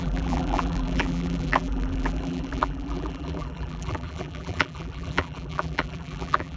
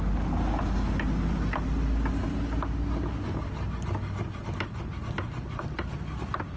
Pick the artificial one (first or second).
first